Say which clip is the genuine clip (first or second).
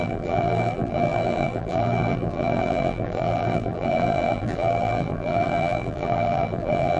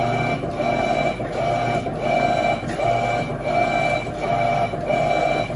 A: second